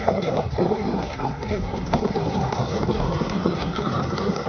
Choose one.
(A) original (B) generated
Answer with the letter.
B